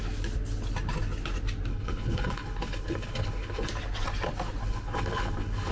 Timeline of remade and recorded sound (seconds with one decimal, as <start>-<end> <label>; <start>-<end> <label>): 0.0-1.7 recorded; 1.7-3.7 remade; 3.7-4.6 recorded; 4.6-5.7 remade